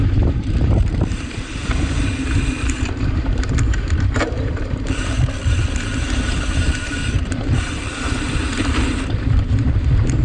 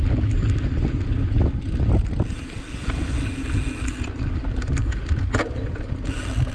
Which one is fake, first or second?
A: first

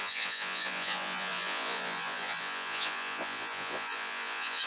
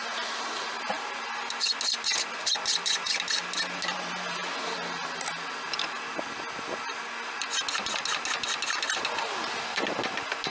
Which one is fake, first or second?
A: first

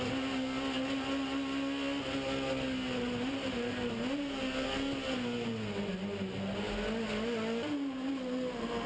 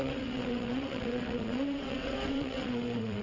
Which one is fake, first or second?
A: second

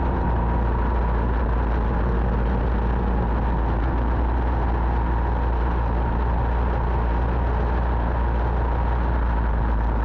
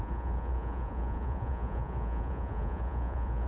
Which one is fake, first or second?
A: second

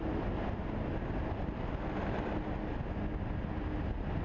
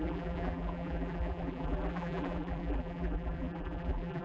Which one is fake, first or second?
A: second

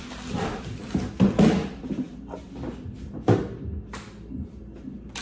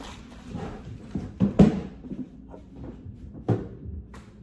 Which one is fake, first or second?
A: second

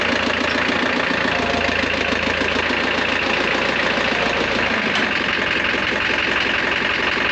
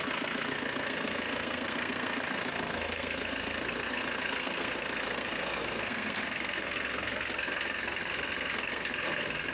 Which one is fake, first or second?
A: second